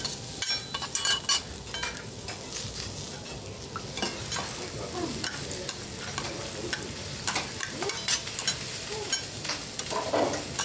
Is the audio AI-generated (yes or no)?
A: no